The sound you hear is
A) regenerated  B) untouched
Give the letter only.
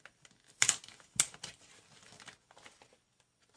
B